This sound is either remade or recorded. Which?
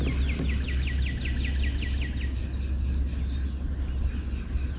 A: recorded